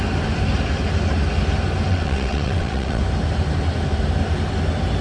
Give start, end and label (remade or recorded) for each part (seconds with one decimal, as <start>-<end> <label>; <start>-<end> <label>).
0.0-1.9 recorded; 1.9-3.0 remade; 3.0-5.0 recorded